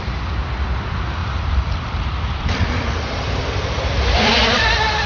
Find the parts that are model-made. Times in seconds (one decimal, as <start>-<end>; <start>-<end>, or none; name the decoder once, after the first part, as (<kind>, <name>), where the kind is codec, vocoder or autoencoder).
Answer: 1.2-4.3 (vocoder, BigVGAN v2)

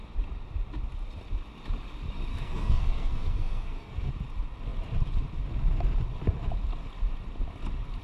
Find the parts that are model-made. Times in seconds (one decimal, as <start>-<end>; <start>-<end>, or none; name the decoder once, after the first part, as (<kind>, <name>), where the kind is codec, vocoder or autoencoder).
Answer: 2.3-4.1 (codec, SNAC)

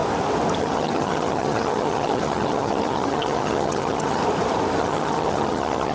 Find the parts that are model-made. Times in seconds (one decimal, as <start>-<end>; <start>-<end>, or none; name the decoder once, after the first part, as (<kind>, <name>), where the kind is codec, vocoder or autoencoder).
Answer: 0.6-4.2 (vocoder, HiFi-GAN); 4.8-5.9

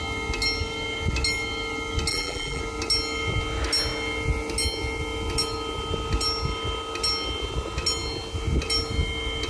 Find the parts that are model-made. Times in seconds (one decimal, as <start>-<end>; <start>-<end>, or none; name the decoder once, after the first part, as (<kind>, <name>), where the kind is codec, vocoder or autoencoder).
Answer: 2.1-2.6 (vocoder, BigVGAN v2)

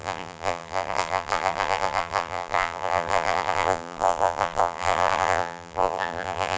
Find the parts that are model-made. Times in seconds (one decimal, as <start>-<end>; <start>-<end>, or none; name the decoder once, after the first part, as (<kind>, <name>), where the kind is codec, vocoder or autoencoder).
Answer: 0.0-6.6 (vocoder, BigVGAN v2)